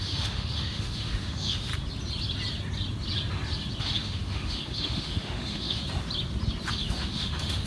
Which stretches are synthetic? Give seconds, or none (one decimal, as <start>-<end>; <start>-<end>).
0.0-1.7; 3.8-5.8; 6.7-7.7